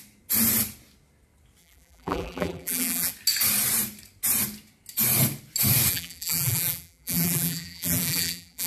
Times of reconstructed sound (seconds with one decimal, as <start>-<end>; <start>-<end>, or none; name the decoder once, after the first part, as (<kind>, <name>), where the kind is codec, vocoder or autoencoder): 1.6-3.1 (vocoder, BigVGAN v2); 5.9-8.7